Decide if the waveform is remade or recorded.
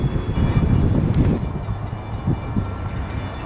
recorded